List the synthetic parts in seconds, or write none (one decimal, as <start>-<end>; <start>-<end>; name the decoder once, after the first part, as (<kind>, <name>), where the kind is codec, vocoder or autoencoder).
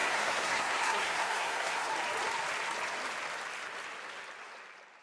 0.0-1.9 (codec, SNAC)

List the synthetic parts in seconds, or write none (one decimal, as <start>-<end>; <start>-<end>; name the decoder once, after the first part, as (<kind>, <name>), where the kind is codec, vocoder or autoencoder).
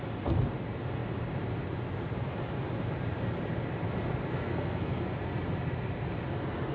4.3-5.0 (codec, SNAC)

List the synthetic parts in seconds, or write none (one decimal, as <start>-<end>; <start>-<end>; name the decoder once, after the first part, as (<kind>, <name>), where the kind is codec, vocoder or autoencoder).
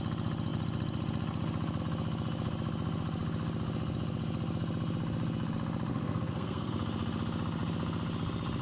5.9-6.7 (codec, SNAC)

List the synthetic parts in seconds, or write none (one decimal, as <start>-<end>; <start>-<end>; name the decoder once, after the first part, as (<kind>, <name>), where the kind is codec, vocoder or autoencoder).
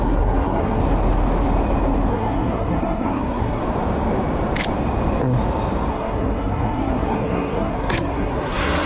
0.0-0.8 (codec, SNAC); 2.1-3.6; 5.9-8.9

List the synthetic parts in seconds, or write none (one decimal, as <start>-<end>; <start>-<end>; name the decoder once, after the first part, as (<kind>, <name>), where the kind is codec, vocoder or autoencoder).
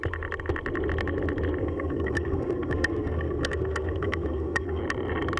1.6-4.8 (codec, SNAC)